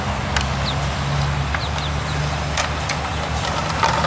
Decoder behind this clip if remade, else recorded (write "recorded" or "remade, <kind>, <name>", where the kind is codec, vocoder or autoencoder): recorded